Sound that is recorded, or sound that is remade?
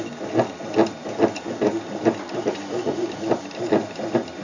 recorded